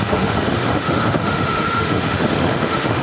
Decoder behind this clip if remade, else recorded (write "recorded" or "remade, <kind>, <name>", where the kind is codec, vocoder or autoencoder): remade, autoencoder, DAC-VAE